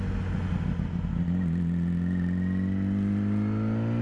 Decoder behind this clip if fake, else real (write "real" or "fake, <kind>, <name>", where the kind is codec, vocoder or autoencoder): real